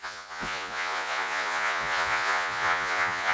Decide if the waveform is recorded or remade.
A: remade